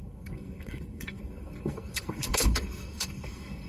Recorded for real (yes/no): no